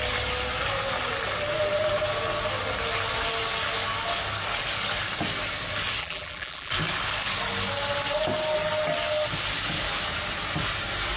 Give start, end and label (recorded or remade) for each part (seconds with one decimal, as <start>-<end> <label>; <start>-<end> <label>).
0.0-6.0 recorded; 6.0-6.7 remade; 6.7-11.2 recorded